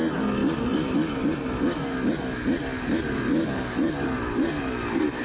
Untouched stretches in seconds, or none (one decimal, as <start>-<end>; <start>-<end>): 0.0-5.2